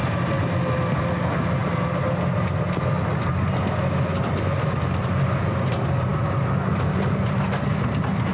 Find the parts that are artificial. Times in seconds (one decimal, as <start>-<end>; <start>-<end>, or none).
none